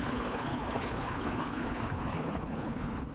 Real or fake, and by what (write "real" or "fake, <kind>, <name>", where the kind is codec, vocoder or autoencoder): fake, codec, HILCodec